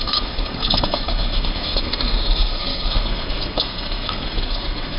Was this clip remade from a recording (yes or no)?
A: yes